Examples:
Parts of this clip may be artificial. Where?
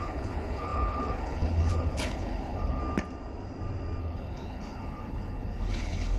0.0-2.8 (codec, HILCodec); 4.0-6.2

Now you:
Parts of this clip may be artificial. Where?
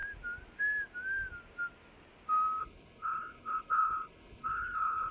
2.6-5.1 (codec, HILCodec)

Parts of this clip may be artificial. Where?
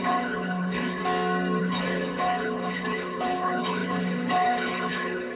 0.0-1.0 (codec, HILCodec); 1.6-5.4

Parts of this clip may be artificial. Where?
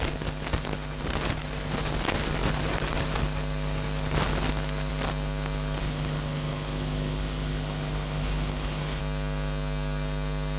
5.8-9.0 (codec, HILCodec)